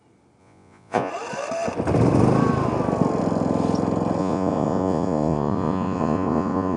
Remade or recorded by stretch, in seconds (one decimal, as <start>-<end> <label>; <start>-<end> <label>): 0.0-0.4 recorded; 0.4-1.1 remade; 1.1-4.2 recorded; 4.2-6.8 remade